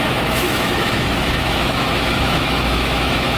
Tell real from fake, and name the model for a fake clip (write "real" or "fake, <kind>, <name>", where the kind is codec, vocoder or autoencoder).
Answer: fake, autoencoder, DAC-VAE